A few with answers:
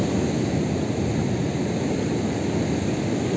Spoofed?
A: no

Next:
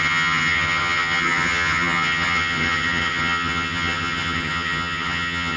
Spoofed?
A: yes